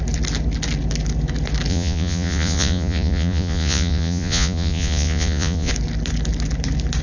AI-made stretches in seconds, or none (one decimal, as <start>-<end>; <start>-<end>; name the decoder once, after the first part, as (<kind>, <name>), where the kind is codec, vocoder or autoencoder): 1.7-5.7 (vocoder, Vocos)